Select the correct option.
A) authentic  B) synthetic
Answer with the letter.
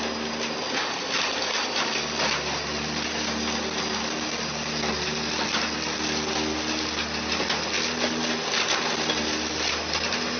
A